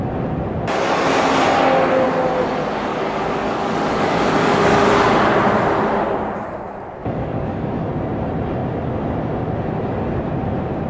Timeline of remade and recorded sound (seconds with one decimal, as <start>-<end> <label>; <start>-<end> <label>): 0.0-2.9 recorded; 2.9-4.9 remade; 4.9-7.0 recorded; 7.0-7.9 remade; 7.9-10.9 recorded